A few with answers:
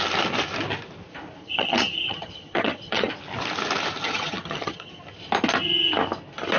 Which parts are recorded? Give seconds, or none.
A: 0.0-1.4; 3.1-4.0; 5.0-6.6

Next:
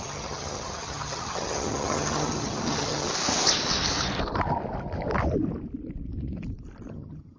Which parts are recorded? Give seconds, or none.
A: 3.1-6.9

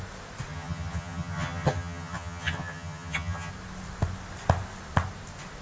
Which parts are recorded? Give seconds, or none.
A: 0.0-0.5; 3.5-5.6

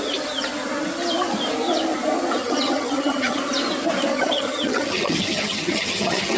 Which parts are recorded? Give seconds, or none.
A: 0.0-2.4; 3.4-4.1

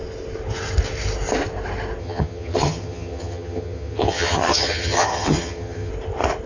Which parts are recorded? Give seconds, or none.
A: 0.0-2.0; 5.9-6.5

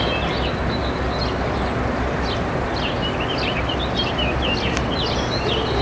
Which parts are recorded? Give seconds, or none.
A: 0.0-5.8

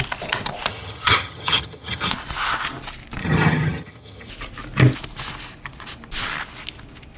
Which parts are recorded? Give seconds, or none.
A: 0.0-0.7; 2.1-3.2; 4.3-7.2